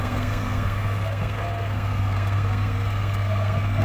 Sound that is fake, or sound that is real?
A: fake